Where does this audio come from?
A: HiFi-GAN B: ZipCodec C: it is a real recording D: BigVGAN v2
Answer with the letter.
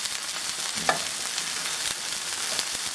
D